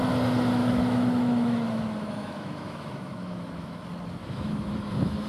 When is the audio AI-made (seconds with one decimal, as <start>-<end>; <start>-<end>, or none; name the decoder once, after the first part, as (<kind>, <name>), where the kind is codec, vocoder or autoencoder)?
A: 0.6-3.8 (autoencoder, DAC-VAE); 4.2-5.3